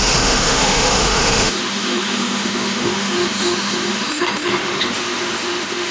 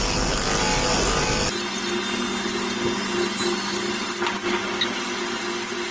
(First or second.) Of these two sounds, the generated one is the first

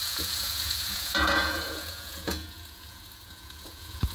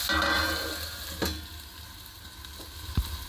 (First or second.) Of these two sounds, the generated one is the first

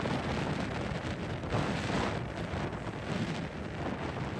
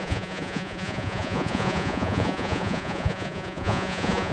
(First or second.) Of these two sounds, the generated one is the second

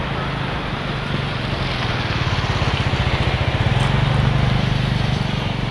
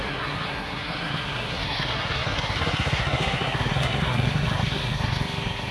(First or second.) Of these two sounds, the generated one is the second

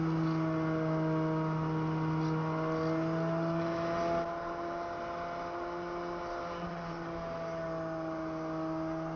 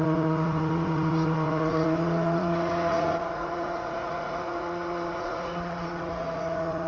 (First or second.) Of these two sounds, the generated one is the second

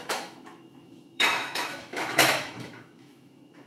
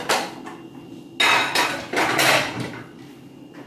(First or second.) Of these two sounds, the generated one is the first